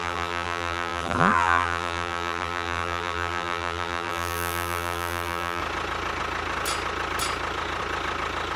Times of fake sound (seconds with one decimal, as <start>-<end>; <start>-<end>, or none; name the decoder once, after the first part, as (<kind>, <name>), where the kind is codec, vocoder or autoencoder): 0.0-5.6 (vocoder, BigVGAN v2)